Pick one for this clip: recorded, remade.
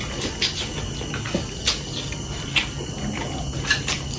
recorded